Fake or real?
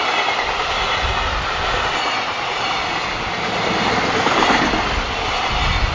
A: real